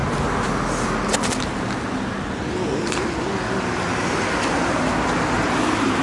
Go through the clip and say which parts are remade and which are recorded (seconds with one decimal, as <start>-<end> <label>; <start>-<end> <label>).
0.0-6.0 recorded